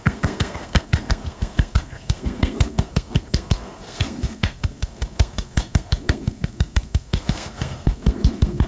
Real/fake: fake